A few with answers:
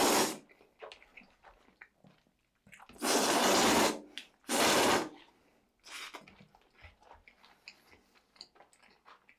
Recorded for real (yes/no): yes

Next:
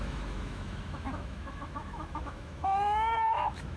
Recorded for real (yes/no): no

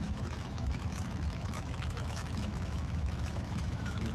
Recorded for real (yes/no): no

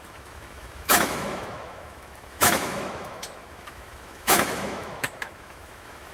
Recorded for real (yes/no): no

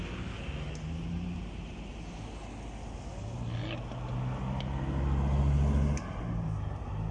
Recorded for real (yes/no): yes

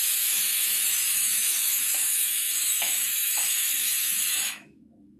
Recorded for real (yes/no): no